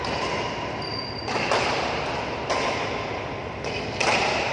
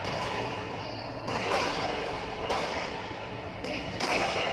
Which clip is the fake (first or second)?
second